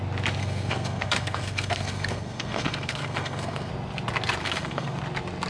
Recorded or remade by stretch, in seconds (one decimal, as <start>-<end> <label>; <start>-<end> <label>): 0.0-0.4 recorded; 0.4-3.7 remade; 3.7-4.4 recorded; 4.4-5.0 remade; 5.0-5.5 recorded